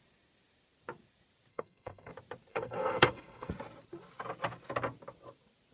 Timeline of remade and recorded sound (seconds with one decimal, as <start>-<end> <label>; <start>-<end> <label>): 0.0-1.5 recorded; 1.5-2.1 remade; 2.1-2.5 recorded; 2.5-3.5 remade; 3.5-5.7 recorded